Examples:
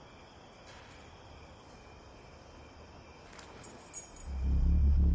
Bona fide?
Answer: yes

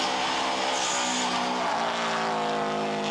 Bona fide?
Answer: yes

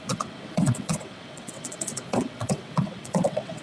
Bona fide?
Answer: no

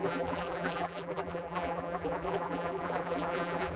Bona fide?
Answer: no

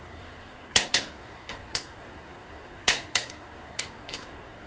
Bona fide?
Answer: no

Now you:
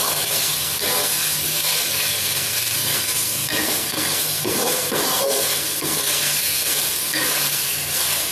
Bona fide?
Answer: no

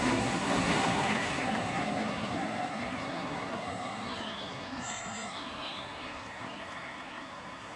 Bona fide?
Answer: no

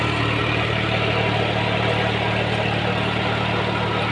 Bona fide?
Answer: yes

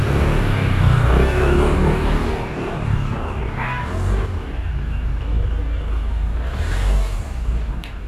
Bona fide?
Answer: no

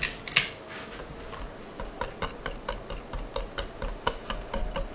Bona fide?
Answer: yes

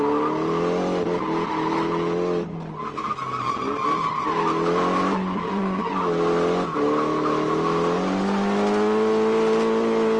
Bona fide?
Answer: yes